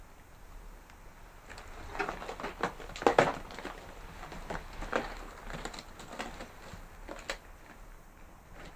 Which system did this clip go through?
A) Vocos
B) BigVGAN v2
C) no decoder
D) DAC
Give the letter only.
C